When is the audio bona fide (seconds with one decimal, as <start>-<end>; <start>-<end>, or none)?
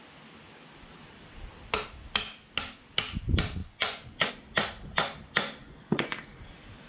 0.0-3.6; 4.3-5.6; 6.2-6.9